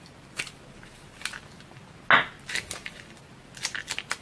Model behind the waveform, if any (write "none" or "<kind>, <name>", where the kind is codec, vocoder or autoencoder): none